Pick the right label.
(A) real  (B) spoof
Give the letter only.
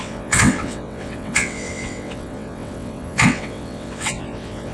B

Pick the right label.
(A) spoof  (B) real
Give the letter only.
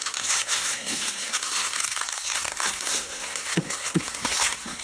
A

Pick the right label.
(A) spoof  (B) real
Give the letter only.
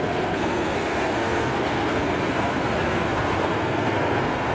A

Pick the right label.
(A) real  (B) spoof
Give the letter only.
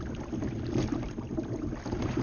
A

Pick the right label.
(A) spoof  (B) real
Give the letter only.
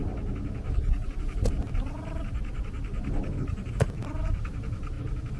B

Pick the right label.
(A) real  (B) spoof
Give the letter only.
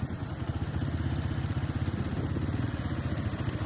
A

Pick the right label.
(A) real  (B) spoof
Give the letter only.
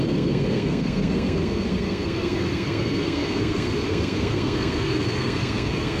B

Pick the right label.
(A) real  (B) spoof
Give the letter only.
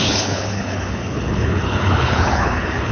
B